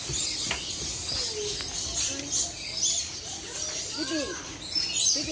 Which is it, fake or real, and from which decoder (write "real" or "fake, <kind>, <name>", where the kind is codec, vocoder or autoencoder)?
real